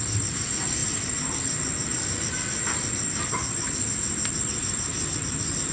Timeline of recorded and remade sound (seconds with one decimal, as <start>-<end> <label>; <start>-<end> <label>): 0.0-5.7 recorded